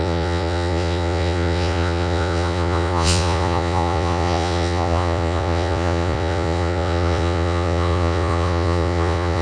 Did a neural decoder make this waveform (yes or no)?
yes